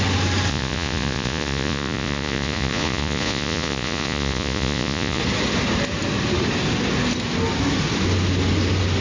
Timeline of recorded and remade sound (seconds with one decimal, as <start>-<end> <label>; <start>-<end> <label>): 0.0-0.5 recorded; 0.5-5.2 remade; 5.2-9.0 recorded